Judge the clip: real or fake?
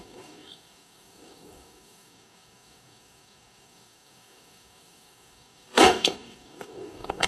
fake